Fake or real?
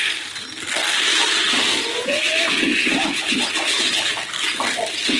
real